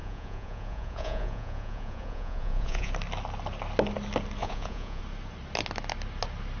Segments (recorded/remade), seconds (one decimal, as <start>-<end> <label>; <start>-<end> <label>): 0.0-2.9 remade; 2.9-4.4 recorded; 4.4-5.0 remade; 5.0-6.6 recorded